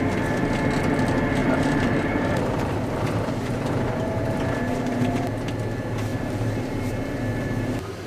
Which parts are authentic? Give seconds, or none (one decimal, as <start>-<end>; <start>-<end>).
0.0-1.4; 5.2-6.1; 7.2-8.1